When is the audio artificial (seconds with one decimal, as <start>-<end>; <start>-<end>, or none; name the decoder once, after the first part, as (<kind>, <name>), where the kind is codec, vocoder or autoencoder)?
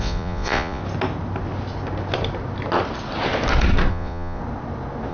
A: 0.0-0.8 (vocoder, Vocos); 3.9-4.4